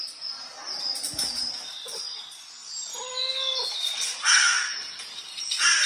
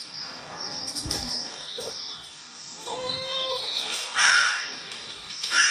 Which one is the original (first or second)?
first